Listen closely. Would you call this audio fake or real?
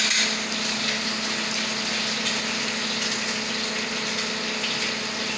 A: real